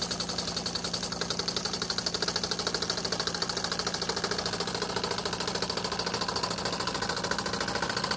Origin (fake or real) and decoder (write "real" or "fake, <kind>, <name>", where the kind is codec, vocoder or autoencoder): real